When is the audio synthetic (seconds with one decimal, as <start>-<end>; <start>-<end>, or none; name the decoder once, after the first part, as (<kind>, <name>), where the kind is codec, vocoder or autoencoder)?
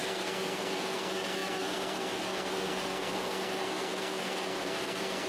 0.0-5.3 (codec, SNAC)